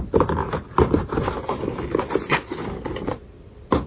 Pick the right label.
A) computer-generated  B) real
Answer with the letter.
B